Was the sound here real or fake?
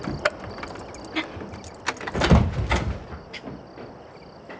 real